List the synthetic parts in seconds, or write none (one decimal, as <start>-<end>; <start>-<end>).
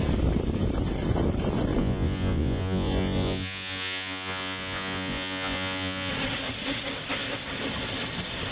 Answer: 1.8-6.1